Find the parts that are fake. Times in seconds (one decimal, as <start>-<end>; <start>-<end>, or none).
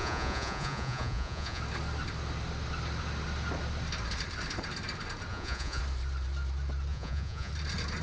0.0-1.6; 5.3-5.8; 6.9-7.5